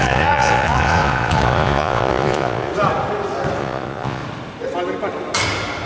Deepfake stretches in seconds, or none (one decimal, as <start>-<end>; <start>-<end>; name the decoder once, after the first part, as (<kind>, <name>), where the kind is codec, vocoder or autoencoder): 0.0-2.7 (vocoder, Vocos); 3.6-4.2